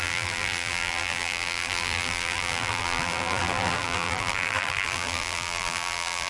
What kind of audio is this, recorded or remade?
remade